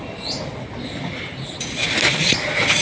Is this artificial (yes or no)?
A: no